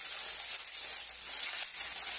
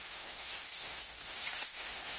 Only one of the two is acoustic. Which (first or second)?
first